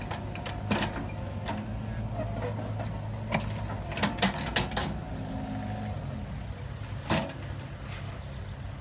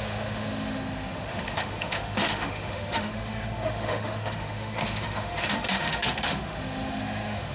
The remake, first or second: second